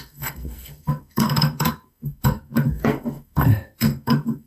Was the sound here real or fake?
fake